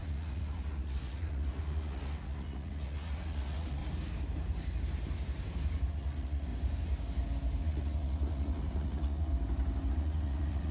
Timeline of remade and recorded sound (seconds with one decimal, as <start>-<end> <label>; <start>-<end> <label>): 0.0-3.8 remade; 3.8-5.9 recorded; 5.9-6.5 remade; 6.5-7.6 recorded; 7.6-9.3 remade; 9.3-9.9 recorded; 9.9-10.7 remade